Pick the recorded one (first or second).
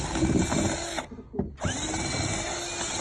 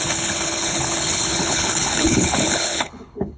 first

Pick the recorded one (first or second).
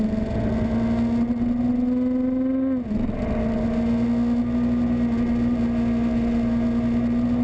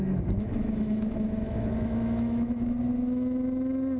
first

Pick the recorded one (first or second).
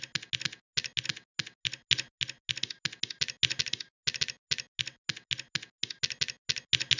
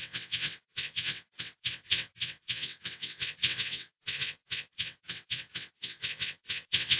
first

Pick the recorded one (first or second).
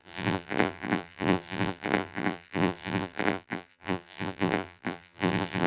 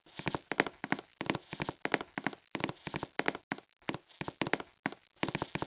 second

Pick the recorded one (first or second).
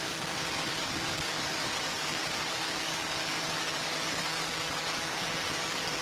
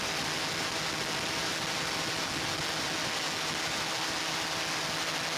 second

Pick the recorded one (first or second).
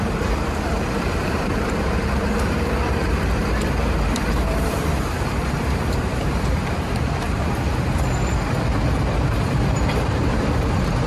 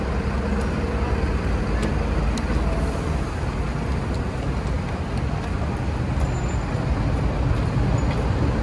second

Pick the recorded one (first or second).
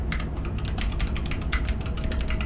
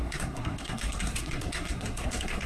first